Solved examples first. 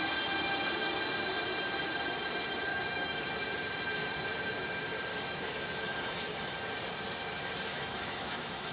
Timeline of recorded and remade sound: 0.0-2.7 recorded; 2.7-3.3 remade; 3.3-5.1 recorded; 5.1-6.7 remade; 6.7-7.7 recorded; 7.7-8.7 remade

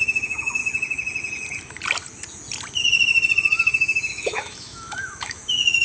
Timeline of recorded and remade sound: 0.0-0.6 remade; 0.6-4.1 recorded; 4.1-5.8 remade

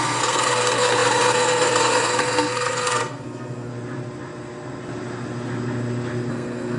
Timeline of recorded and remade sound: 0.0-3.7 remade; 3.7-6.3 recorded; 6.3-6.8 remade

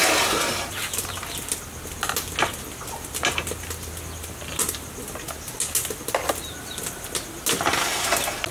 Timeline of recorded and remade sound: 0.0-8.5 recorded

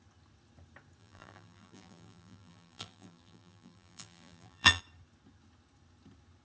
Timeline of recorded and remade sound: 0.0-1.0 recorded; 1.0-4.8 remade; 4.8-6.4 recorded

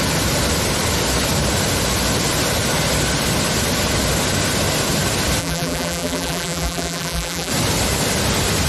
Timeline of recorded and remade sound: 0.0-5.4 recorded; 5.4-7.5 remade; 7.5-8.7 recorded

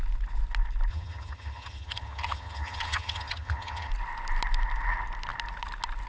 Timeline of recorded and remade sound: 0.0-0.9 recorded; 0.9-3.9 remade; 3.9-6.1 recorded

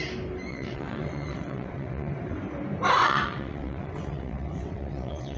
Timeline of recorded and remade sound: 0.0-0.5 recorded; 0.5-2.4 remade; 2.4-3.0 recorded; 3.0-5.4 remade